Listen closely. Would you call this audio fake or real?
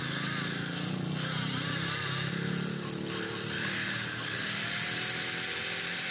real